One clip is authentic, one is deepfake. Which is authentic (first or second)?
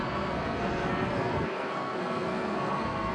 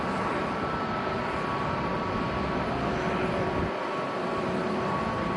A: second